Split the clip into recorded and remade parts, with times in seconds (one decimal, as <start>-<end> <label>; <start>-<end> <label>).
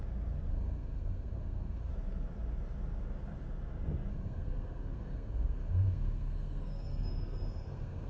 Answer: 0.0-0.5 recorded; 0.5-1.9 remade; 1.9-4.1 recorded; 4.1-8.1 remade